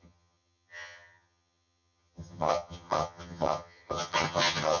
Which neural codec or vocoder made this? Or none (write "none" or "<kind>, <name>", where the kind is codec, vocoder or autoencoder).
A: vocoder, HiFi-GAN